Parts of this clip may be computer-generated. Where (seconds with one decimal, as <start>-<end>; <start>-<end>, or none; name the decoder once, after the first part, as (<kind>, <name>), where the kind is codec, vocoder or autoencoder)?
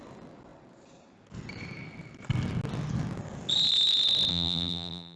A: 4.3-5.2 (vocoder, BigVGAN v2)